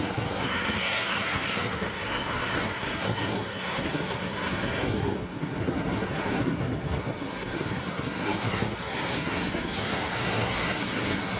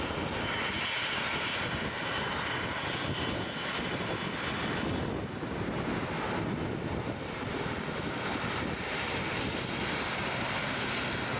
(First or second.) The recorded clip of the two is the second